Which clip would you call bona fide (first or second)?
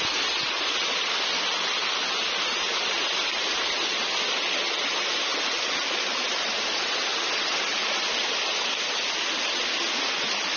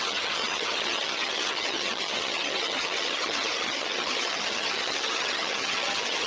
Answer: first